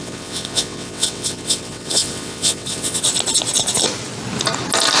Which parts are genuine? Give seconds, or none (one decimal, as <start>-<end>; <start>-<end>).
3.0-5.0